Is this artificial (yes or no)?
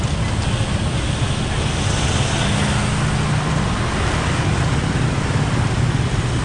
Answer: no